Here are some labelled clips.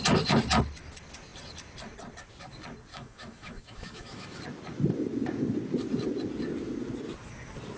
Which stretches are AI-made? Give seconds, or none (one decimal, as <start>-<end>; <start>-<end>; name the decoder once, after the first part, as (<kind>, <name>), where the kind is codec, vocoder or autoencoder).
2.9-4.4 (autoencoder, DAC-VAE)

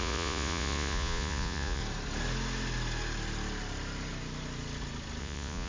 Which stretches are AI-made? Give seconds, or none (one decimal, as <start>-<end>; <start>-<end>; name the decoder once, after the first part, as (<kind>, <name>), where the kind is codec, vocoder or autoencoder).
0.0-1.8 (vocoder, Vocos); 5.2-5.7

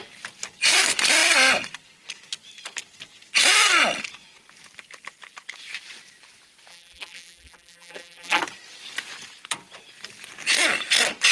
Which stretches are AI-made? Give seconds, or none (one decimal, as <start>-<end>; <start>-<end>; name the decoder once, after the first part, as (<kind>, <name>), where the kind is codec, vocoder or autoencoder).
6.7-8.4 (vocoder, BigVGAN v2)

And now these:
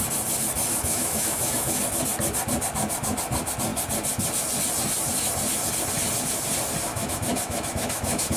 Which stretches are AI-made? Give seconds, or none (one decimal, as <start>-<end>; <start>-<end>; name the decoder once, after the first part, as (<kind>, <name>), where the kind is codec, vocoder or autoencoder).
0.7-1.8 (autoencoder, DAC-VAE); 6.9-8.4

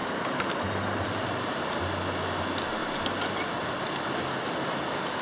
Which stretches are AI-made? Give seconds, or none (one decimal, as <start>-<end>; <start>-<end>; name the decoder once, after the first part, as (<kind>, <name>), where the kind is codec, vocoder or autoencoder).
0.0-1.3 (vocoder, BigVGAN v2)

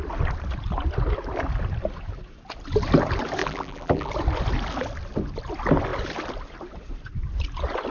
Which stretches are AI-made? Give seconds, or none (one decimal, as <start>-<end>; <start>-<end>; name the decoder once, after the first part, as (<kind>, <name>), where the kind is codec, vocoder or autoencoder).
3.4-4.1 (vocoder, BigVGAN v2)